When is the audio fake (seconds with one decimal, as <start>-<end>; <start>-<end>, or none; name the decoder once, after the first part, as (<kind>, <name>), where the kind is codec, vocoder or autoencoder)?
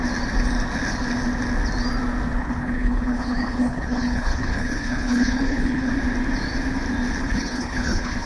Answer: 2.4-5.9 (codec, HILCodec); 7.2-8.3